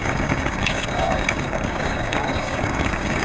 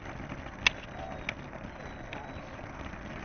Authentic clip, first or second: second